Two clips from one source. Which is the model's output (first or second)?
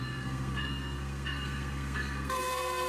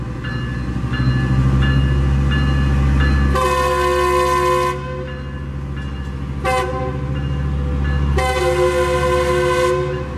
first